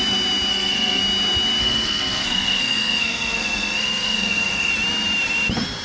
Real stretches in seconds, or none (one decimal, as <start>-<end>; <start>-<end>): 0.0-0.5; 1.0-1.6; 4.7-5.8